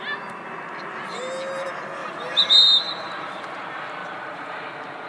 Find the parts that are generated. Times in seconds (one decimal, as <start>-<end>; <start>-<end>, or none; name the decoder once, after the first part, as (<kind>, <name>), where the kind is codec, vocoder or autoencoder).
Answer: 2.0-3.6 (vocoder, BigVGAN v2); 4.0-5.1